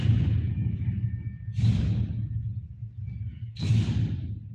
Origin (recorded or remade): recorded